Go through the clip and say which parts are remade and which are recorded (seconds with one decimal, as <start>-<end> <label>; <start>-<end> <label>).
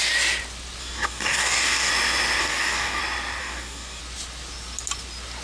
0.0-0.8 recorded; 0.8-1.9 remade; 1.9-2.4 recorded; 2.4-3.0 remade; 3.0-3.4 recorded; 3.4-4.0 remade; 4.0-5.4 recorded